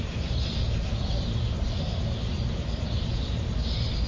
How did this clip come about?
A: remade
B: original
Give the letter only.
A